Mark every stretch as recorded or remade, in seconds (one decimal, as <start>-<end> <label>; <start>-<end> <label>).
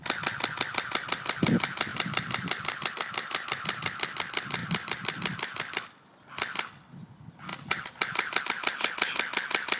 0.0-1.9 recorded; 1.9-2.9 remade; 2.9-4.6 recorded; 4.6-5.9 remade; 5.9-7.5 recorded; 7.5-8.4 remade; 8.4-9.8 recorded